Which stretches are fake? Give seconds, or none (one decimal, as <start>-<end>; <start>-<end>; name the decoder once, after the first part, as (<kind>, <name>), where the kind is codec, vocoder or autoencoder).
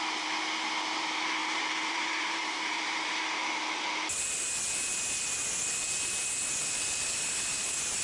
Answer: 1.4-3.2 (vocoder, BigVGAN v2)